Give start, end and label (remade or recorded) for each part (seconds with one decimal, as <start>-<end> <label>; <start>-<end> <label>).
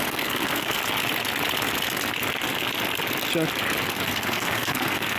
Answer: 0.0-0.8 remade; 0.8-3.9 recorded; 3.9-5.2 remade